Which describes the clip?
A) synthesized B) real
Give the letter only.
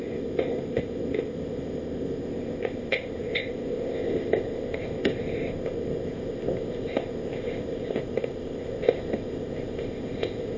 A